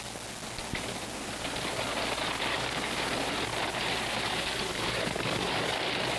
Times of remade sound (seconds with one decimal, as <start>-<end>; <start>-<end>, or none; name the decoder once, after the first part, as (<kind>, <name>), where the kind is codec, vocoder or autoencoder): 2.5-3.1 (codec, DAC); 4.7-5.8